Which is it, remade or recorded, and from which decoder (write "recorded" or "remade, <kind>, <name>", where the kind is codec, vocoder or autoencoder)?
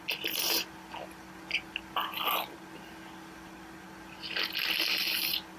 recorded